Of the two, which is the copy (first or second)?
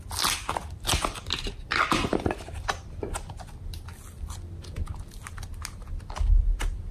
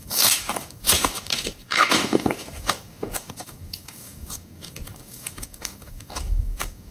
second